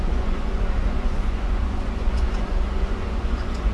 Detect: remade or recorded remade